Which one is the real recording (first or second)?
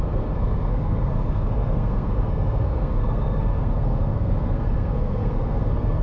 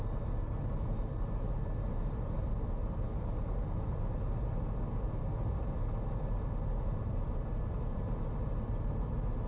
second